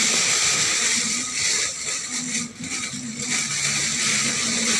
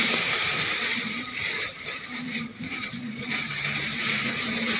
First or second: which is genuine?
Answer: first